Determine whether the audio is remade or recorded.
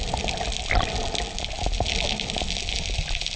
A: recorded